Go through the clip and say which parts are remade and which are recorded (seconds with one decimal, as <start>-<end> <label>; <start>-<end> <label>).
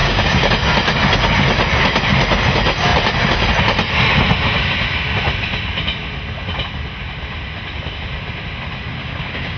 0.0-0.5 remade; 0.5-9.0 recorded; 9.0-9.6 remade